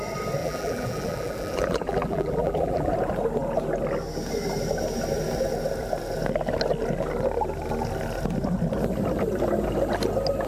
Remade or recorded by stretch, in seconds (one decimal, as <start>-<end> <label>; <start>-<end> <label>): 0.0-0.4 recorded; 0.4-2.9 remade; 2.9-10.5 recorded